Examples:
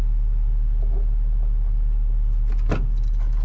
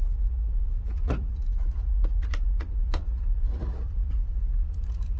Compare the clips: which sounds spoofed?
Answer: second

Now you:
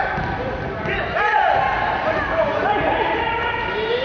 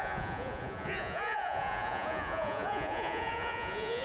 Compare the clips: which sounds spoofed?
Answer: second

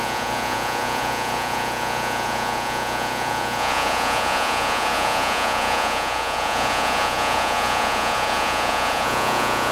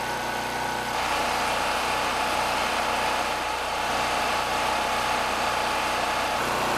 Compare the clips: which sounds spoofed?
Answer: first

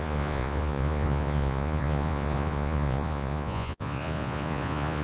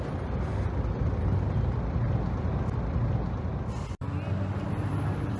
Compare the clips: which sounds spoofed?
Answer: first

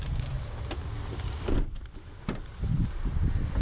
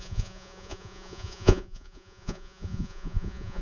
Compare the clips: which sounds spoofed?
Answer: second